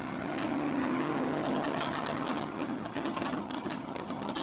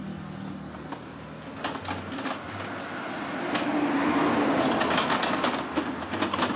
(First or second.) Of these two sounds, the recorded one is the second